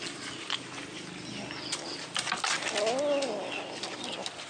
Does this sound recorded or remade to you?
recorded